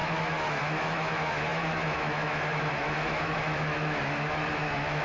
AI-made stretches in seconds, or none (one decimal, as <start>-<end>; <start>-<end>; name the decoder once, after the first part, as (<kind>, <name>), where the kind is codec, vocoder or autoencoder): 0.0-5.0 (autoencoder, DAC-VAE)